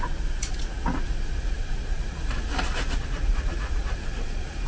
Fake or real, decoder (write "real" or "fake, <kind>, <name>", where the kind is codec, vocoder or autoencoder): fake, vocoder, Vocos